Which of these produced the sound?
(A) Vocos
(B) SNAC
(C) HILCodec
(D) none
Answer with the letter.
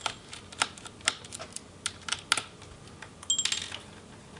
D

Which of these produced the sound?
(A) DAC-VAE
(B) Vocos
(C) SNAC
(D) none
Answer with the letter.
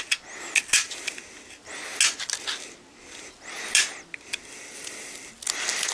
D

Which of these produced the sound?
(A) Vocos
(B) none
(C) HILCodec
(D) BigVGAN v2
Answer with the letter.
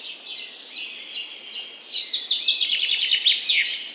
B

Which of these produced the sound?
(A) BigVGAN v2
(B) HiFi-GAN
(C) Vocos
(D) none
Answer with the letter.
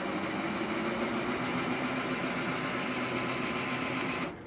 D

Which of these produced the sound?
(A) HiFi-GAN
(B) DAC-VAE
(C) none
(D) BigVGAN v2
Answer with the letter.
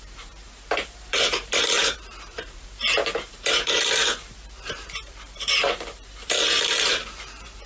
D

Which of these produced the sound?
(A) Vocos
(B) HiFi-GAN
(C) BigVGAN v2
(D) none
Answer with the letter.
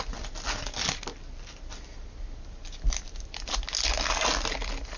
D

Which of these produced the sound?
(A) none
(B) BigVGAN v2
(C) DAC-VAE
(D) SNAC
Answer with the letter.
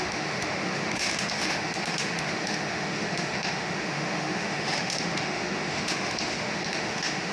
C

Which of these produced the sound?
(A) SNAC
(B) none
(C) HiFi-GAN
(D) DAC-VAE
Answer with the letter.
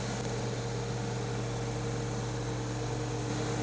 B